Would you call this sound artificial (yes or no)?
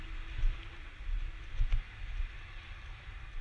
no